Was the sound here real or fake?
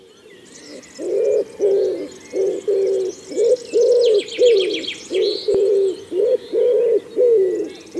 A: real